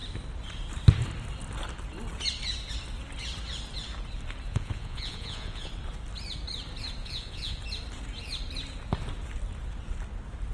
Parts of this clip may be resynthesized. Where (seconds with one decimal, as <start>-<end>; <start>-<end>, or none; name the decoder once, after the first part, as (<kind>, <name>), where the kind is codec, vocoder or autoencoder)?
4.5-5.7 (vocoder, Vocos); 7.0-7.6